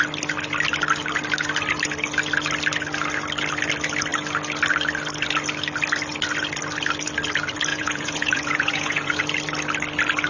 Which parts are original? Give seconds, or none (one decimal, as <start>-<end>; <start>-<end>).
0.0-7.7; 9.2-10.3